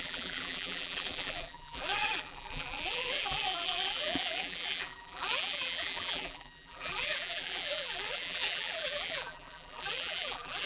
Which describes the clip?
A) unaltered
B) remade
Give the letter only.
B